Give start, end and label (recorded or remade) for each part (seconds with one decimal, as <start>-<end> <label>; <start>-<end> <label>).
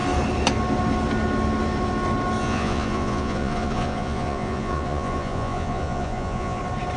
0.0-2.4 recorded; 2.4-6.6 remade; 6.6-7.0 recorded